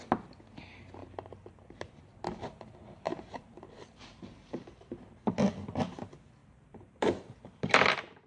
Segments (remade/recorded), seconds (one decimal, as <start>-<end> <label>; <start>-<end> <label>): 0.0-1.0 recorded; 1.0-2.0 remade; 2.0-3.1 recorded; 3.1-5.3 remade; 5.3-6.4 recorded; 6.4-7.9 remade; 7.9-8.3 recorded